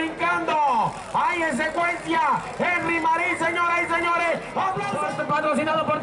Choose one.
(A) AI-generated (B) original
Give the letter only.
B